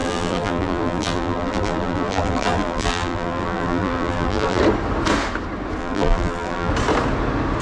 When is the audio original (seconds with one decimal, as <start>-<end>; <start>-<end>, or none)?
4.6-5.8; 6.7-7.6